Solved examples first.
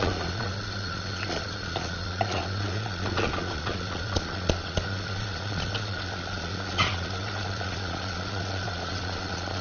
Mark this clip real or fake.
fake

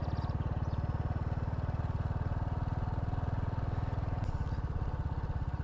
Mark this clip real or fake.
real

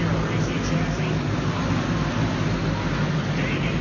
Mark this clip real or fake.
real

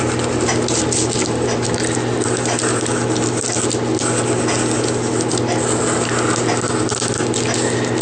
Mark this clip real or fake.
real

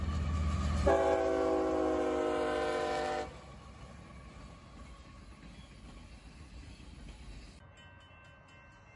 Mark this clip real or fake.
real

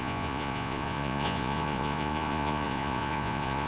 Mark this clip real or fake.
fake